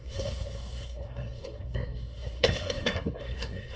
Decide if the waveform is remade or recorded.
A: remade